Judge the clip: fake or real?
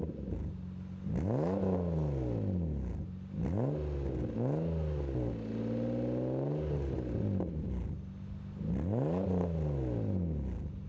real